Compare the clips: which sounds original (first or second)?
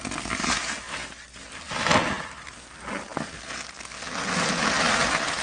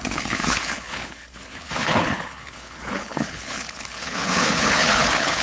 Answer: first